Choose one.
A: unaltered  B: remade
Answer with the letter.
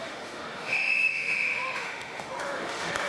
B